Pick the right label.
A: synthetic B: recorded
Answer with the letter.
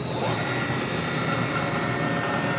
B